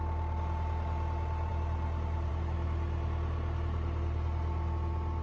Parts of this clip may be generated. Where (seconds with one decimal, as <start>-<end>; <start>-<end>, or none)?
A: none